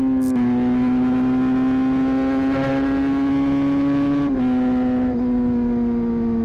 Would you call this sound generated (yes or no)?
no